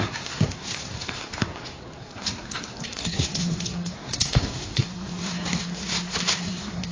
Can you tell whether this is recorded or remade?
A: remade